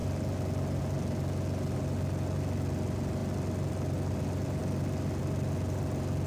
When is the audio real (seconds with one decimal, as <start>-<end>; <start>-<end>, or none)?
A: 0.0-6.3